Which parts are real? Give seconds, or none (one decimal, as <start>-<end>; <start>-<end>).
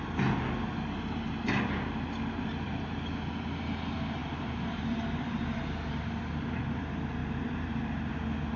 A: 0.0-4.2; 6.2-7.2; 8.1-8.6